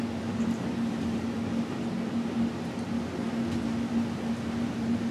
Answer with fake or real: real